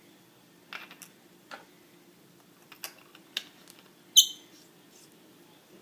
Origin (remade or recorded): recorded